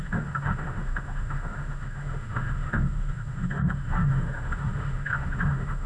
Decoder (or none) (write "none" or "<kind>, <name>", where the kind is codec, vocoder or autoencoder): autoencoder, DAC-VAE